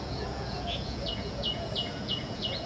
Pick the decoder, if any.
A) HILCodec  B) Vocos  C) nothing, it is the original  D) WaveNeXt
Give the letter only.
B